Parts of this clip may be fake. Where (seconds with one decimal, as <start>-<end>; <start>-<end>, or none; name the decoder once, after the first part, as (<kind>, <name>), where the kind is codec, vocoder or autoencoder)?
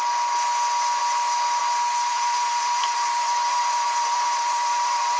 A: 2.1-5.2 (vocoder, BigVGAN v2)